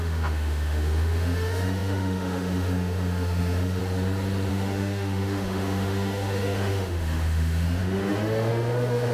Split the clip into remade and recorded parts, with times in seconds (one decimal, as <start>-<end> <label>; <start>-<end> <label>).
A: 0.0-3.8 remade; 3.8-4.5 recorded; 4.5-9.1 remade